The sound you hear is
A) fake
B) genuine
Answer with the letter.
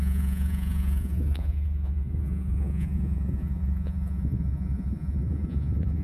A